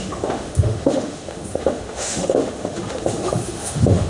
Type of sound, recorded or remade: remade